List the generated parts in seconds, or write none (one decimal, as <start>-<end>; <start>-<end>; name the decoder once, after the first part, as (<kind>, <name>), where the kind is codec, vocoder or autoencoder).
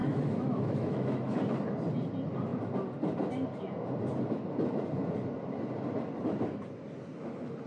0.0-1.4 (autoencoder, DAC-VAE)